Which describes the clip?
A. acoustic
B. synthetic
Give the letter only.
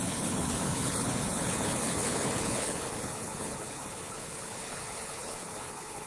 B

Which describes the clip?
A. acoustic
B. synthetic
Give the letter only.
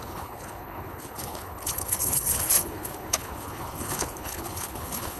B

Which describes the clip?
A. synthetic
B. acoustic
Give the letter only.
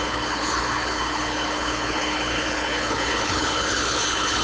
A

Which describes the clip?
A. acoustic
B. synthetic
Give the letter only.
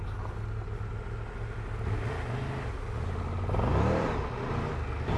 A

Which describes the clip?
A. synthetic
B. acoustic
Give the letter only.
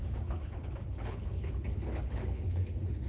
A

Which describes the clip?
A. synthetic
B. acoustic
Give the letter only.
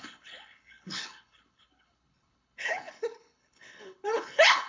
A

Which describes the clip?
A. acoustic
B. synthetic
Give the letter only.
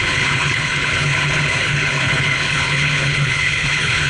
B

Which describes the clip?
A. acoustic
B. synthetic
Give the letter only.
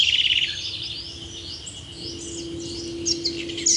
A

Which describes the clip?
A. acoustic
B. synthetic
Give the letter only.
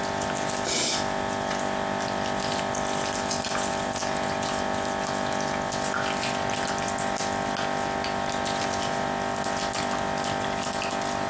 A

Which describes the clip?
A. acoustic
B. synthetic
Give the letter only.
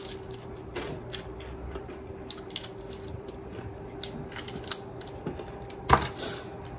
A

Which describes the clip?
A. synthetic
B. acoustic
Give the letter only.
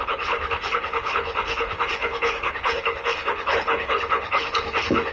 A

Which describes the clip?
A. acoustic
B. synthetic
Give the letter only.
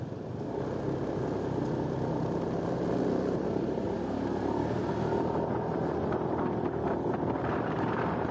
A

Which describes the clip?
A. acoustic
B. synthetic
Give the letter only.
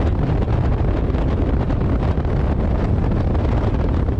A